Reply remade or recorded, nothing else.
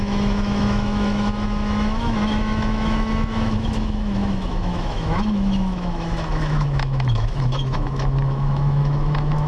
remade